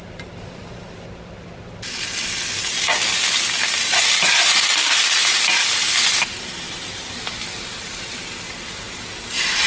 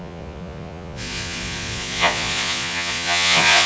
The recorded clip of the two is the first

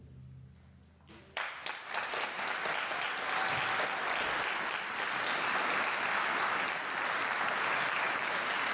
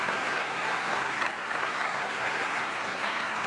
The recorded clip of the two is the first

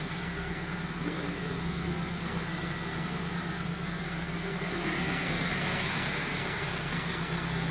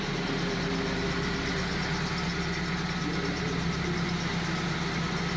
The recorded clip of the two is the second